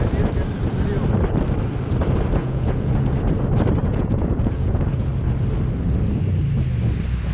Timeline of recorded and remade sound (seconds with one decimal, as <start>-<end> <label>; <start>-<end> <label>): 0.0-2.4 recorded; 2.4-3.0 remade; 3.0-3.9 recorded; 3.9-5.1 remade; 5.1-7.3 recorded